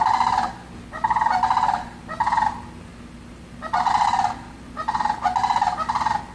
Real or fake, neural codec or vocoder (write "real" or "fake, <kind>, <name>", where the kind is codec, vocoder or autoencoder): real